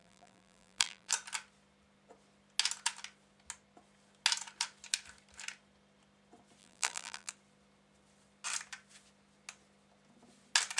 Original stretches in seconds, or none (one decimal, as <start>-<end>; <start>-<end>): 1.1-6.6; 7.3-10.8